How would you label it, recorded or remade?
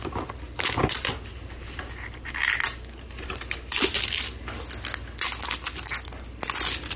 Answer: recorded